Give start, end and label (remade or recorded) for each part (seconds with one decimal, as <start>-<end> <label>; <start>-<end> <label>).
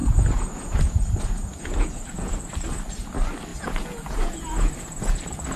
0.0-2.5 remade; 2.5-3.5 recorded; 3.5-5.6 remade